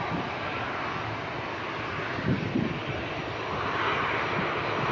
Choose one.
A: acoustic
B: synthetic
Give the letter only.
A